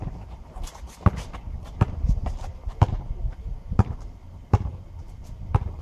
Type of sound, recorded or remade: remade